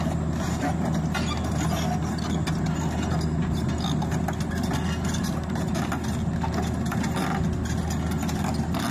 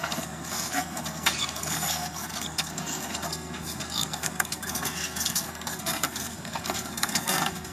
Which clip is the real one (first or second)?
first